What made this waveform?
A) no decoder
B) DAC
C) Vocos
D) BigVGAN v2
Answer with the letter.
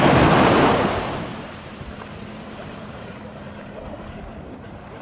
D